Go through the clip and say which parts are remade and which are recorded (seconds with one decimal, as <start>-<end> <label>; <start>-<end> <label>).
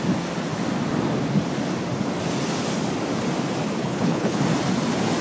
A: 0.0-3.8 recorded; 3.8-4.4 remade; 4.4-5.2 recorded